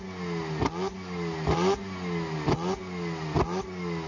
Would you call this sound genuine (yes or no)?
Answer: yes